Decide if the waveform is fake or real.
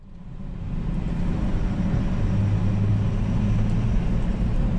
real